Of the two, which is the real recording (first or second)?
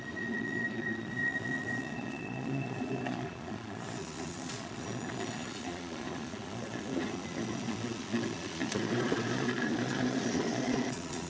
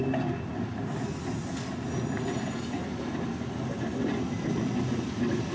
second